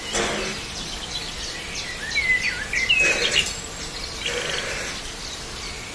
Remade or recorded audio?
recorded